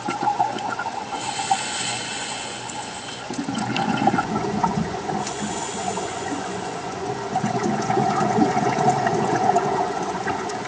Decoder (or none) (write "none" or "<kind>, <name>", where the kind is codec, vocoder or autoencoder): vocoder, Vocos